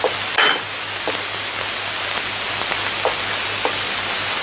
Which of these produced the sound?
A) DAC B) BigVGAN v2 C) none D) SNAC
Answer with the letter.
C